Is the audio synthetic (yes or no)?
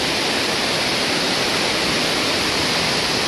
no